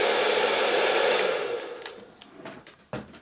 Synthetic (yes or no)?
no